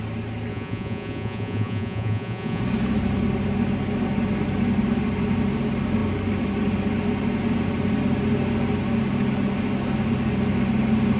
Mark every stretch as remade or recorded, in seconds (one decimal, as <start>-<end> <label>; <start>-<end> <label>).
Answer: 0.0-0.5 recorded; 0.5-2.6 remade; 2.6-11.2 recorded